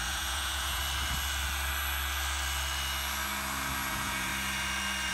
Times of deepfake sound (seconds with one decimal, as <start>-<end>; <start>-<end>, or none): 0.0-0.8; 3.9-4.3